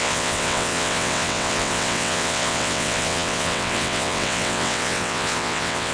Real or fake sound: fake